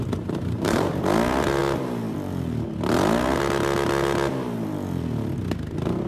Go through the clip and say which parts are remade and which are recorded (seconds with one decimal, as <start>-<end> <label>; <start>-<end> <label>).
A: 0.0-1.0 remade; 1.0-6.1 recorded